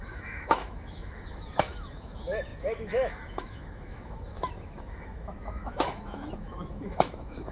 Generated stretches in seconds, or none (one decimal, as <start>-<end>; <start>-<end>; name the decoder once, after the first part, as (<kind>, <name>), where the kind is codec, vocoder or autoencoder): 0.0-7.5 (autoencoder, DAC-VAE)